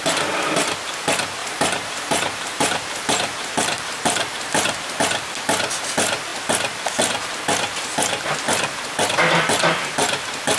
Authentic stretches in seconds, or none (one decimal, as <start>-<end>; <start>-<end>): 0.0-1.4; 5.0-10.6